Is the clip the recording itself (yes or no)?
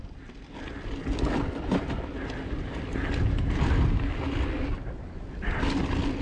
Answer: yes